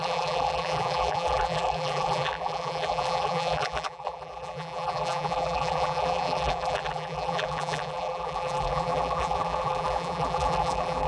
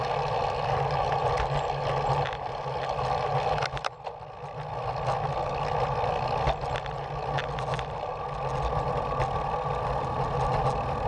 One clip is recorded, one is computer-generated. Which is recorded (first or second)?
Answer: second